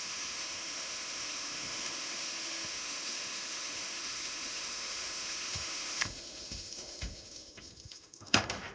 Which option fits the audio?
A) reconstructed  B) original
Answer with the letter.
A